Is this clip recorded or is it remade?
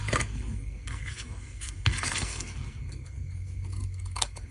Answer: remade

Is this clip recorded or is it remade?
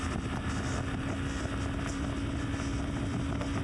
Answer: recorded